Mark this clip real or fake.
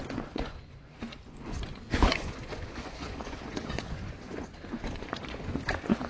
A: fake